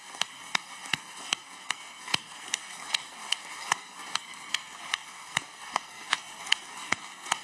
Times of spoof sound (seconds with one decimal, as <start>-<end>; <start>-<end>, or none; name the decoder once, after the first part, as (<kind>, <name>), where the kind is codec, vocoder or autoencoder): 0.0-7.4 (codec, SNAC)

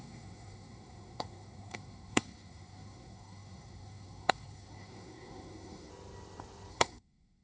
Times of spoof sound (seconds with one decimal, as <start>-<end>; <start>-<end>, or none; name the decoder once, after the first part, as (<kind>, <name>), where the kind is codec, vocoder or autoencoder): 0.0-5.9 (codec, SNAC); 6.7-7.4